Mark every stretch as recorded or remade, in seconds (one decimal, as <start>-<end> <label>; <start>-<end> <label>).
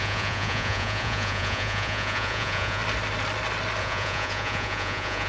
0.0-2.8 remade; 2.8-3.8 recorded; 3.8-5.3 remade